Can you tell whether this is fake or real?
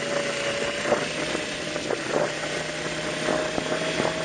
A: real